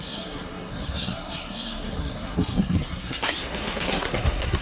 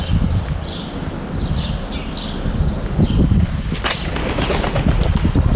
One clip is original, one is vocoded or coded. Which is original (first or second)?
second